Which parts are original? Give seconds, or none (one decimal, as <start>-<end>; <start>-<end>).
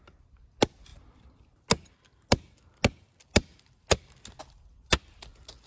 0.0-5.7